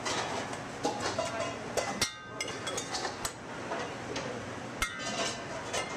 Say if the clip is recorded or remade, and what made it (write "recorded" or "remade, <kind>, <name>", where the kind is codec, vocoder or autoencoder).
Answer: recorded